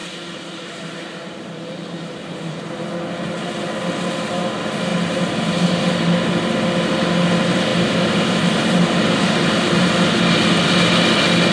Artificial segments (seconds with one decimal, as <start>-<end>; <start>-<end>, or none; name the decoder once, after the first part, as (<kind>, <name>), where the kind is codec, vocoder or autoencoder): 0.0-2.8 (vocoder, BigVGAN v2); 4.9-5.9; 7.7-9.9